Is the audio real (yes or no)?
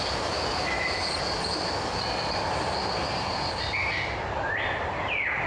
no